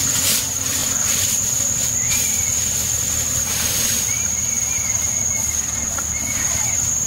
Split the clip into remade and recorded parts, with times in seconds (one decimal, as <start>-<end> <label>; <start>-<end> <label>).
0.0-7.1 recorded